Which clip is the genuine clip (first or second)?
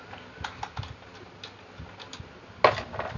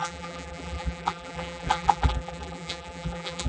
first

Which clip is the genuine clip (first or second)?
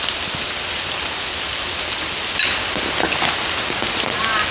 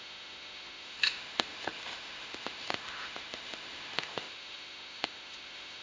first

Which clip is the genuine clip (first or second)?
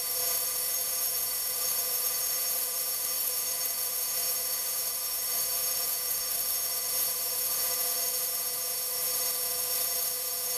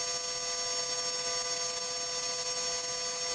second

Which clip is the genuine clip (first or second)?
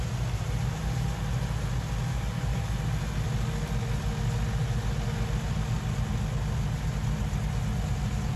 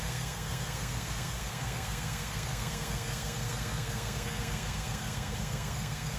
first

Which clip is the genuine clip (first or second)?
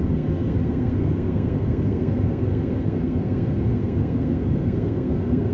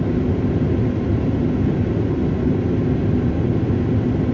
second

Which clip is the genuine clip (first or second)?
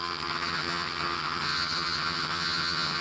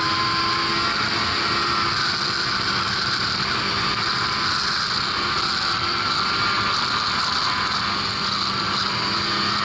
second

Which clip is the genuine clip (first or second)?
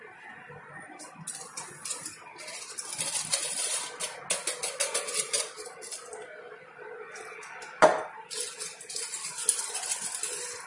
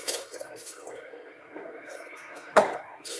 first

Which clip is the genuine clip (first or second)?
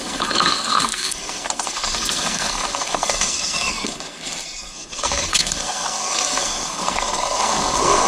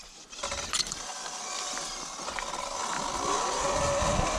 second